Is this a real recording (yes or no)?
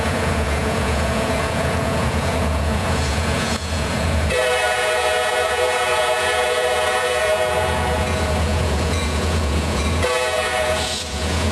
no